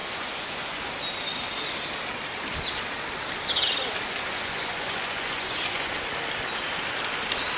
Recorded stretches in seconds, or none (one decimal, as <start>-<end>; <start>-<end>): 0.8-4.3; 5.9-7.6